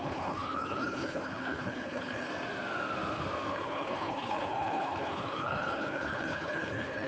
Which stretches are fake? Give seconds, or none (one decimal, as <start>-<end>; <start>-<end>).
0.0-2.3; 3.5-7.1